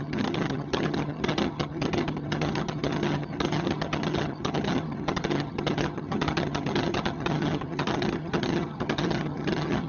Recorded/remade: remade